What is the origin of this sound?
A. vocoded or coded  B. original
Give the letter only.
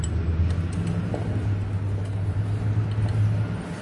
B